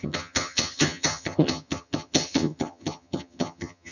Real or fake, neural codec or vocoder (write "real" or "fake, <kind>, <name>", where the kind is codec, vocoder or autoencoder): fake, vocoder, HiFi-GAN